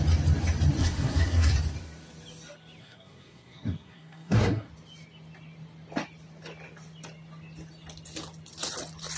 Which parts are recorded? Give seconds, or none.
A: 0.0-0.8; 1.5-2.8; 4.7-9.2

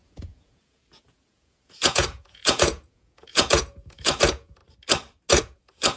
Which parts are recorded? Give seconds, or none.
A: 4.6-5.3